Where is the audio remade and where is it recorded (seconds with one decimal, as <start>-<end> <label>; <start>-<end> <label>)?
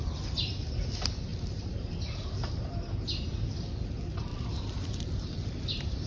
0.0-1.3 recorded; 1.3-2.6 remade; 2.6-4.3 recorded; 4.3-6.1 remade